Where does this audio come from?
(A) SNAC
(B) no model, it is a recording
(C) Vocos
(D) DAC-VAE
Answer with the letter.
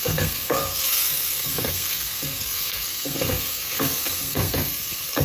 A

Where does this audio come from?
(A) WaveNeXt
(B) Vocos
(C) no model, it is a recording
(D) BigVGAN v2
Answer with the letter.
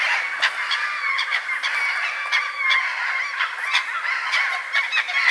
C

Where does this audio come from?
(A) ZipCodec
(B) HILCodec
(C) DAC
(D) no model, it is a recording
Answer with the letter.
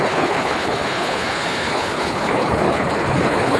B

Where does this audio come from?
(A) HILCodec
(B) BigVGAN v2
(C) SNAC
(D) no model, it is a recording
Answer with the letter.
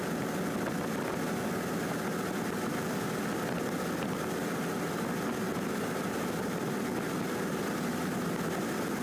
D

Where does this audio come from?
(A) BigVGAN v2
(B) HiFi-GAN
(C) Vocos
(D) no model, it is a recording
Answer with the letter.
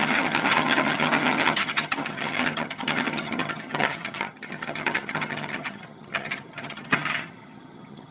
B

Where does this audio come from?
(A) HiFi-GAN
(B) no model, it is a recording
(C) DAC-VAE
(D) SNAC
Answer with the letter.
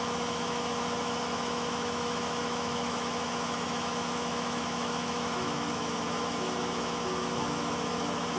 C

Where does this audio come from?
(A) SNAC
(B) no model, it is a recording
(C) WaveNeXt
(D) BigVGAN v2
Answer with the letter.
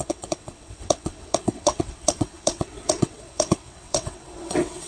C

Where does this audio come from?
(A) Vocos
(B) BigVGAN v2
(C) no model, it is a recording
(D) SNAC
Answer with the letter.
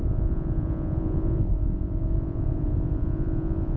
A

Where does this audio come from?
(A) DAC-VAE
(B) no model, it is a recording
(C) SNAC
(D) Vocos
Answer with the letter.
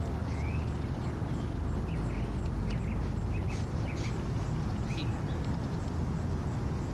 B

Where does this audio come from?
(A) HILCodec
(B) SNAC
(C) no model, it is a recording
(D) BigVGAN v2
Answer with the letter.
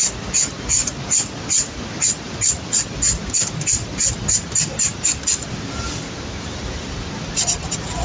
C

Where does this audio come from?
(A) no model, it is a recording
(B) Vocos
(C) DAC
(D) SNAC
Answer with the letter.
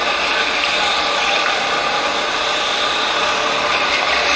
A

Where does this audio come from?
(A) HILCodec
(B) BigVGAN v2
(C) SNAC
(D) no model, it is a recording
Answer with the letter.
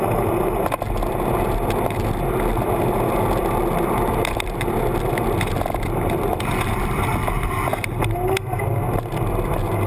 D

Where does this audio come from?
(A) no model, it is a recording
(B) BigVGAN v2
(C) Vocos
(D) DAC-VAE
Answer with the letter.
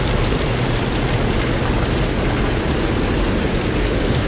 A